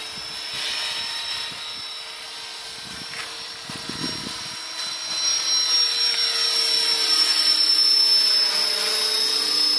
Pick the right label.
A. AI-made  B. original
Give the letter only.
B